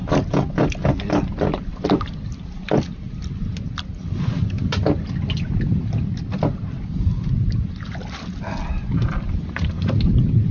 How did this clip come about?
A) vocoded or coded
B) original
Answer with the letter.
B